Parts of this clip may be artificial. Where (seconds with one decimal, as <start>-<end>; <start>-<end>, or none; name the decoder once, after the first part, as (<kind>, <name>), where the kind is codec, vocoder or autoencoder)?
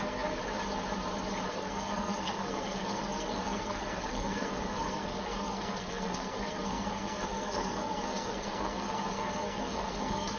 0.0-0.4 (codec, SNAC); 1.5-10.4